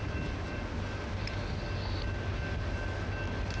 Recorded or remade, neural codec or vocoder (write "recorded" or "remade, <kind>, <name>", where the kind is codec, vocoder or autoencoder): recorded